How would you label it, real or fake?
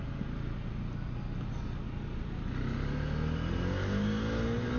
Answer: real